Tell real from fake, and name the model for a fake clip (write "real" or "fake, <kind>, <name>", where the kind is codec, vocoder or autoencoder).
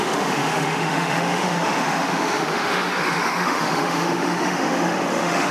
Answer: fake, autoencoder, DAC-VAE